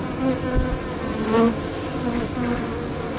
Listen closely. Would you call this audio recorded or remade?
recorded